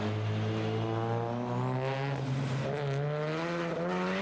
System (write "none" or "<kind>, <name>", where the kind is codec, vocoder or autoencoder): none